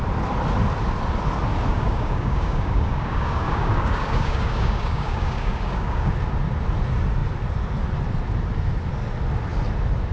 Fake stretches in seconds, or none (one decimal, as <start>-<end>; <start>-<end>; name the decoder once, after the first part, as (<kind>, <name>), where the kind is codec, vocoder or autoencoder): 1.7-6.1 (codec, DAC)